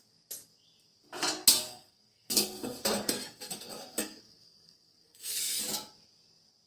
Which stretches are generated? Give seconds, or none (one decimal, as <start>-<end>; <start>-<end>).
1.6-5.6